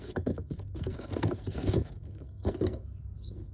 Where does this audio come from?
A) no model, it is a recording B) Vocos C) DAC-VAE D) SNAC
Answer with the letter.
D